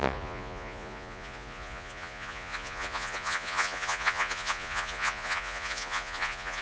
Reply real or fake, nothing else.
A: fake